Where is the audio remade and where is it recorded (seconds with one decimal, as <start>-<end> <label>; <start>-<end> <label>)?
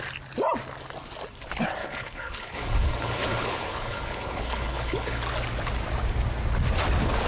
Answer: 0.0-1.8 recorded; 1.8-5.2 remade; 5.2-7.3 recorded